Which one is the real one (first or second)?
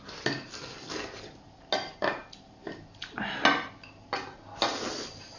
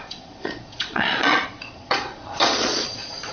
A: first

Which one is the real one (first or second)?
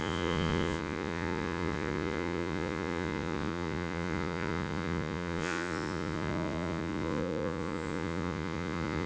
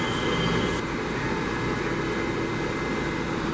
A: second